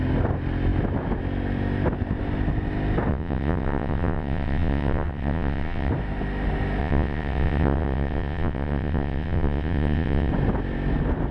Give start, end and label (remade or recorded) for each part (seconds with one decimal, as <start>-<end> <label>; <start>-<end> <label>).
0.0-3.1 recorded; 3.1-5.9 remade; 5.9-6.8 recorded; 6.8-10.3 remade; 10.3-11.3 recorded